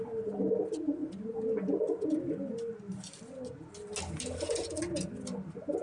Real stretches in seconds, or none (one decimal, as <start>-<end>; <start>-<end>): 0.0-5.8